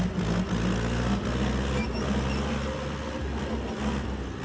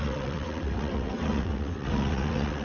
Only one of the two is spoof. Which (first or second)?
second